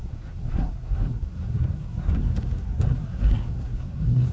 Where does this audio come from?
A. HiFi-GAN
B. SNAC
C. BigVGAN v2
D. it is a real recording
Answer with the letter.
B